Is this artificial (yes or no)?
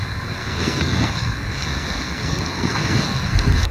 yes